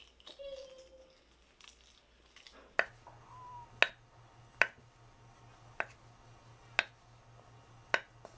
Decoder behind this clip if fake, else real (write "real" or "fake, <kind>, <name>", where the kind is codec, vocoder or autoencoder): real